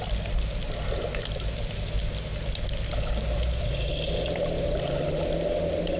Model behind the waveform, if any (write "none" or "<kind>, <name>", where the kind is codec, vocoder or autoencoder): none